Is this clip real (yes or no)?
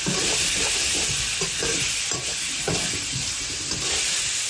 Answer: yes